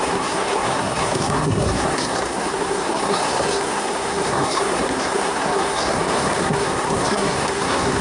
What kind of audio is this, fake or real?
fake